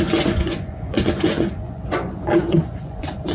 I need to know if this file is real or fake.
fake